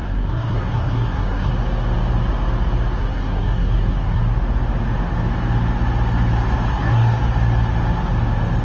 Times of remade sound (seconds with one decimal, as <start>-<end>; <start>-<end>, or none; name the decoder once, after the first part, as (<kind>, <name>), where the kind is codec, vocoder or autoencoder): 0.0-1.5 (codec, SNAC); 3.0-4.2; 6.7-7.2